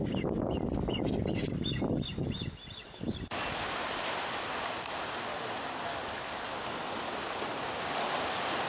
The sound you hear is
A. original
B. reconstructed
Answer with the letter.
A